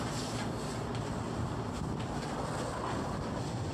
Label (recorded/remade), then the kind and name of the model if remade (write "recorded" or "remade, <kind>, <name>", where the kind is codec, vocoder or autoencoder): remade, vocoder, BigVGAN v2